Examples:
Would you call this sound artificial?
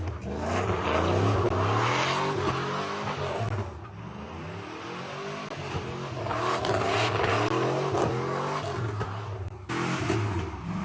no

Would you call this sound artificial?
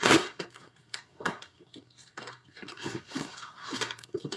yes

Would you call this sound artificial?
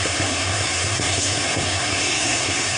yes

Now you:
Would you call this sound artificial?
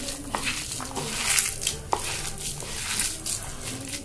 no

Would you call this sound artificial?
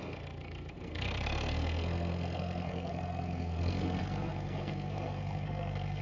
yes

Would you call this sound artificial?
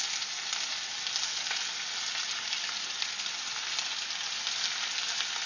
no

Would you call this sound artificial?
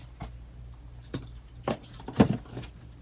no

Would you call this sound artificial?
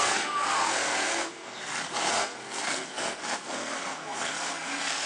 yes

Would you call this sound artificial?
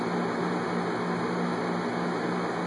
no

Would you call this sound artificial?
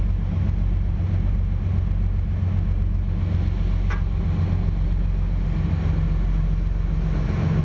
no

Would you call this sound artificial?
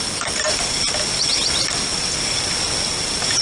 no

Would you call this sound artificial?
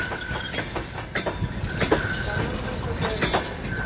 no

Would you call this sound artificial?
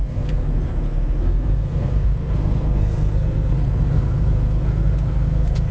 yes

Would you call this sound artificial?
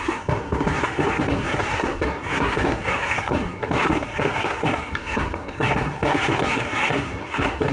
yes